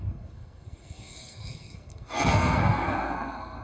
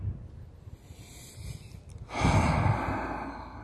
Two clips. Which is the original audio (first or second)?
second